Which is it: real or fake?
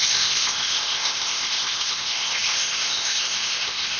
fake